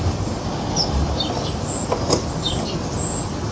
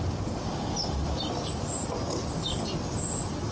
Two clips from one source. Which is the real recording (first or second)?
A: first